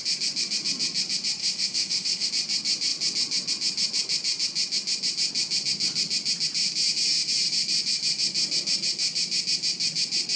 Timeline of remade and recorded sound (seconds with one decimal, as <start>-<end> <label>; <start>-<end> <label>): 0.0-1.4 recorded; 1.4-2.3 remade; 2.3-10.4 recorded